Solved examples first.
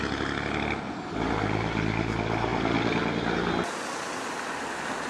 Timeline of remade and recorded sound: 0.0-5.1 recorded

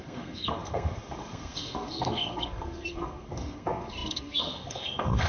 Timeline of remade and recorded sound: 0.0-5.3 remade